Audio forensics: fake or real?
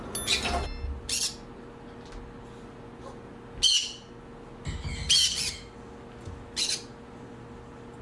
real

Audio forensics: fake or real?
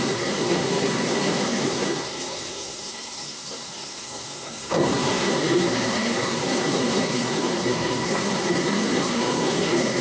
fake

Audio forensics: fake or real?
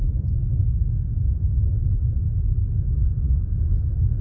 real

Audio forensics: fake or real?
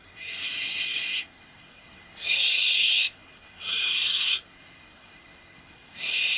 fake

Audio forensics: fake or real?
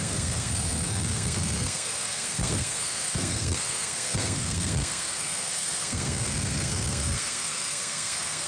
fake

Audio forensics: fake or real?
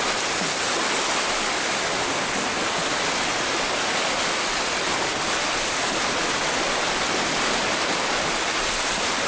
real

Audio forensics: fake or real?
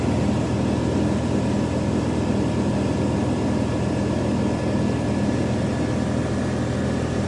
real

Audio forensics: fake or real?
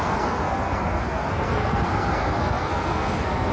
fake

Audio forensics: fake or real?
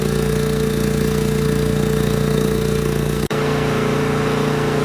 fake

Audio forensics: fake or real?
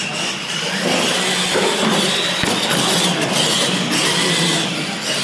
real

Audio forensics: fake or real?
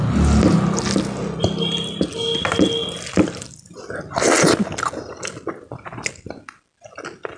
real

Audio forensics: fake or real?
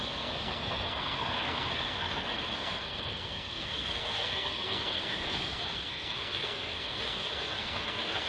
fake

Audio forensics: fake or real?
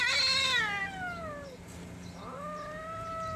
real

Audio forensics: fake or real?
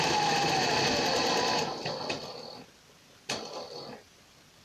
real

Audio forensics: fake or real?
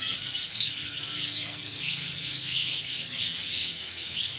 fake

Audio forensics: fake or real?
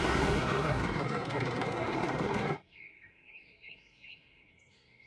fake